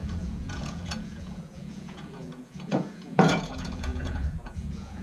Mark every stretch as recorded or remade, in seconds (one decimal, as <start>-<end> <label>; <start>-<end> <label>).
0.0-5.0 remade